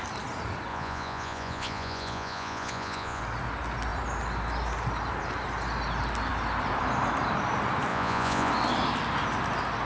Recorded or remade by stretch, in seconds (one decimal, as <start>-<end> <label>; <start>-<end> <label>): 0.0-0.7 recorded; 0.7-3.2 remade; 3.2-7.9 recorded; 7.9-8.5 remade; 8.5-9.9 recorded